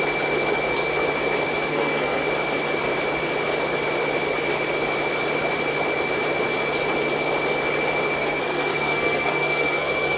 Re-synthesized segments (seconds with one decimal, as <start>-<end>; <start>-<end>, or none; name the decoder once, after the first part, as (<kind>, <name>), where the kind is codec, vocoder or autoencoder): 1.7-2.2 (codec, SNAC); 8.2-10.2